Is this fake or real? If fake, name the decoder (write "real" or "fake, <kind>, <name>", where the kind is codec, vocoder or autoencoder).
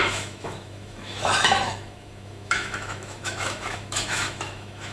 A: fake, autoencoder, DAC-VAE